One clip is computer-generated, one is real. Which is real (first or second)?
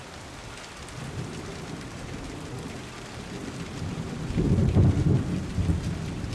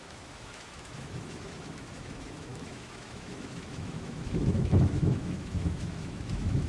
first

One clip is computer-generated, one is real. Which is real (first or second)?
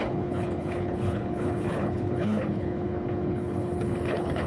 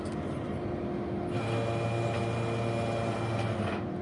second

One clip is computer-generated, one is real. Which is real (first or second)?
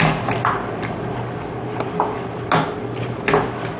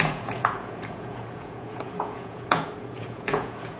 first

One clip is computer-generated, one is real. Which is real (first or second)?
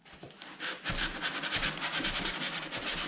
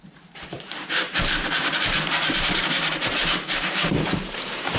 first